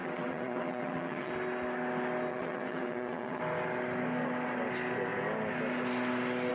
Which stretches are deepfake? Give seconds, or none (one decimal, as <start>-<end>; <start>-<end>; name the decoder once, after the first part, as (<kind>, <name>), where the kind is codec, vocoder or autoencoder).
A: 0.0-1.3 (vocoder, WaveNeXt); 2.3-3.4